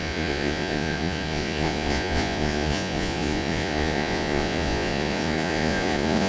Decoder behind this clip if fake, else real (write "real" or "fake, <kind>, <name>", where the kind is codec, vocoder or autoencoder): fake, vocoder, Vocos